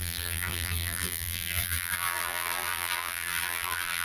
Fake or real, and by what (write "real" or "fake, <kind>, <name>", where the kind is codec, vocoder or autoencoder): fake, vocoder, BigVGAN v2